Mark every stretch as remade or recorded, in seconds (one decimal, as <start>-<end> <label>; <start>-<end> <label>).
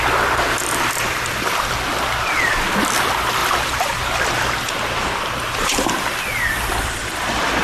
0.0-0.6 recorded; 0.6-1.6 remade; 1.6-7.6 recorded